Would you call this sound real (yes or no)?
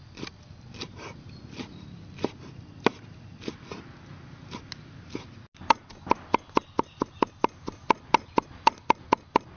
yes